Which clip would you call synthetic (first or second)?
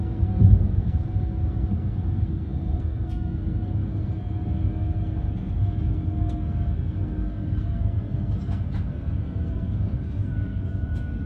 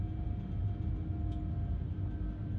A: first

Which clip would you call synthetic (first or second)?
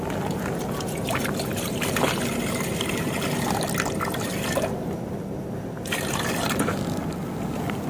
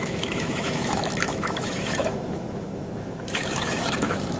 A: second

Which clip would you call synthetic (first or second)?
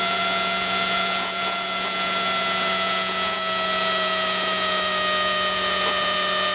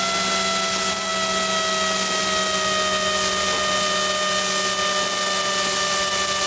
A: first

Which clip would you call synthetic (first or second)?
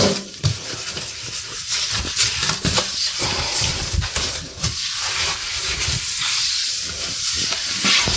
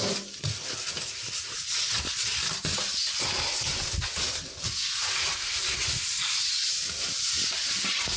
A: first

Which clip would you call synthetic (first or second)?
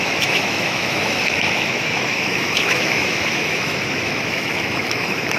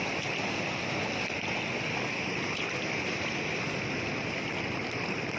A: first